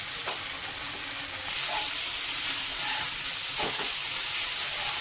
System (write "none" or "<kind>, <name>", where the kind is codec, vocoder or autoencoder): none